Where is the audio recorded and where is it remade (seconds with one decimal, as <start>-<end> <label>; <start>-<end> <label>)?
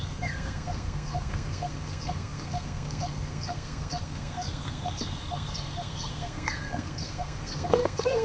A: 0.0-8.2 remade